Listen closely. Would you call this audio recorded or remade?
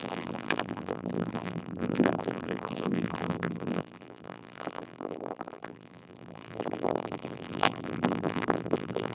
remade